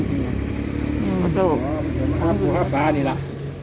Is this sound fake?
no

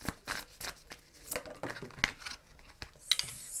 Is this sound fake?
no